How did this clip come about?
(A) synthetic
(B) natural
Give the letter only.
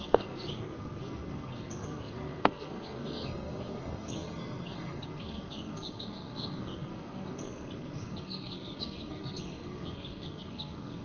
A